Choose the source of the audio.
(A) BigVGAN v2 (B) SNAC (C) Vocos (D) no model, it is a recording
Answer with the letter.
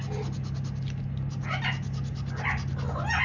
D